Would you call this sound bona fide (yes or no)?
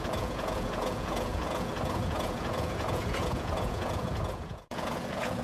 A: no